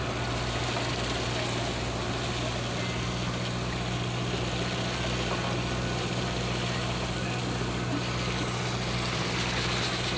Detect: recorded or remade recorded